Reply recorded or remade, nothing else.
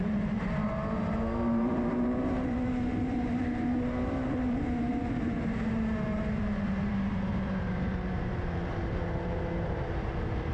remade